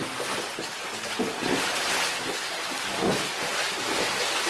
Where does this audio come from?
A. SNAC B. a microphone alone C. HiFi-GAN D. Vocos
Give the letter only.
B